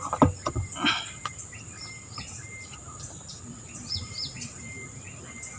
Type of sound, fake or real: real